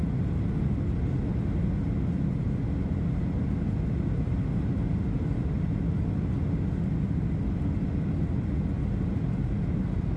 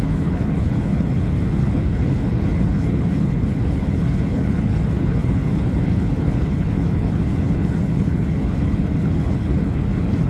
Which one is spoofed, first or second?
second